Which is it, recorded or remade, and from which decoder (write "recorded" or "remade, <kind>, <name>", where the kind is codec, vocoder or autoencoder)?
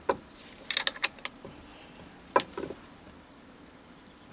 recorded